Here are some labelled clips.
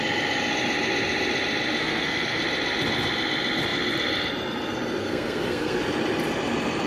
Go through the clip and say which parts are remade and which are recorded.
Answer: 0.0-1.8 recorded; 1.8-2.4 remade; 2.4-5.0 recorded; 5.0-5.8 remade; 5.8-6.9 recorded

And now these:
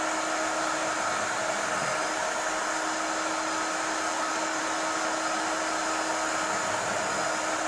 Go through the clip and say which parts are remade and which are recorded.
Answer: 0.0-4.1 recorded; 4.1-4.6 remade; 4.6-7.7 recorded

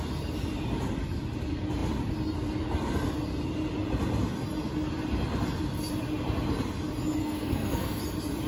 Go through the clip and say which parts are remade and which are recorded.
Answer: 0.0-7.2 recorded; 7.2-8.0 remade; 8.0-8.5 recorded

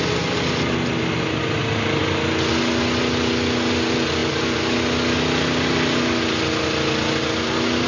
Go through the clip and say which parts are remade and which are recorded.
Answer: 0.0-7.9 recorded

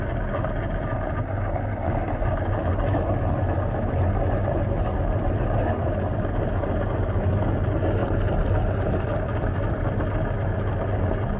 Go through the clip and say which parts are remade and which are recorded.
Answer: 0.0-8.0 recorded; 8.0-9.8 remade; 9.8-11.4 recorded

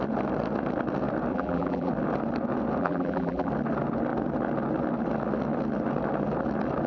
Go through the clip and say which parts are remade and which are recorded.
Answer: 0.0-1.3 recorded; 1.3-1.9 remade; 1.9-2.8 recorded; 2.8-3.5 remade; 3.5-6.9 recorded

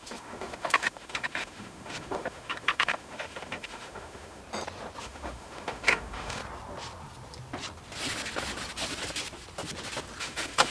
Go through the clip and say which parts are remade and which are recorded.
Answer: 0.0-4.4 remade; 4.4-5.0 recorded; 5.0-6.4 remade; 6.4-10.2 recorded; 10.2-10.7 remade